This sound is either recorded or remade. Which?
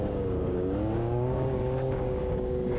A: remade